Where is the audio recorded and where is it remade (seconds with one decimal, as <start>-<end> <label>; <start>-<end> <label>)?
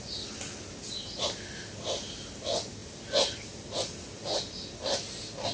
0.0-5.5 recorded